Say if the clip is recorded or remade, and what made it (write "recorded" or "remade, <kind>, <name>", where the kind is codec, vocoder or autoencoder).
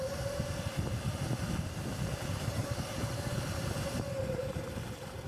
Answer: remade, vocoder, BigVGAN v2